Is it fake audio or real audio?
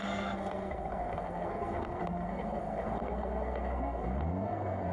fake